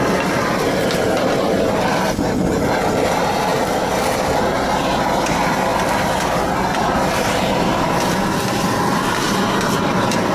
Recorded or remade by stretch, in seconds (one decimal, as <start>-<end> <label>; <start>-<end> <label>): 0.0-10.3 recorded